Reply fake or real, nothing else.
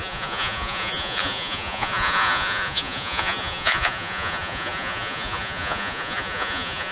fake